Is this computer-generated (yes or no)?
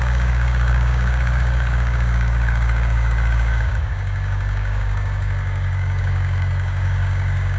yes